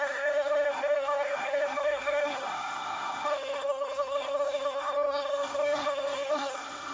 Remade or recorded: remade